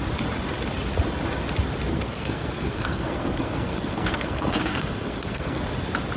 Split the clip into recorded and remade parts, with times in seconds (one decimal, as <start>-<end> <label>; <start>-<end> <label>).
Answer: 0.0-1.9 recorded; 1.9-5.6 remade; 5.6-6.2 recorded